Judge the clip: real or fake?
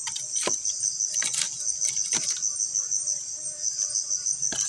real